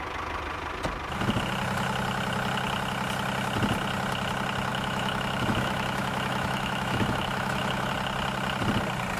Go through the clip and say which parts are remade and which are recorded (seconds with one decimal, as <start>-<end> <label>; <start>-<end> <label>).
0.0-4.7 recorded; 4.7-7.9 remade; 7.9-9.2 recorded